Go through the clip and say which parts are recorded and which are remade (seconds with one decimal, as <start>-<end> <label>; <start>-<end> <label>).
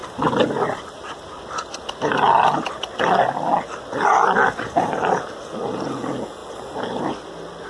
0.0-7.7 recorded